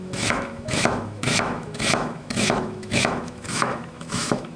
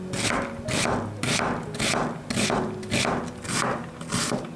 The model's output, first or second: first